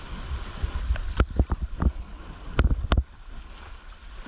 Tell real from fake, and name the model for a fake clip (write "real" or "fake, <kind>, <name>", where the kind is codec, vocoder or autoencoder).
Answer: real